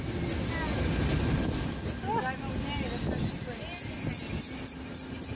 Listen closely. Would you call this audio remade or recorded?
recorded